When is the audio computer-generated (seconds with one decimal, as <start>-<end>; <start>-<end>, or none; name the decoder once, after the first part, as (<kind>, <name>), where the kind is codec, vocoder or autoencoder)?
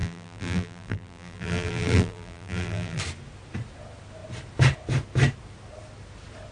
0.0-3.0 (vocoder, BigVGAN v2)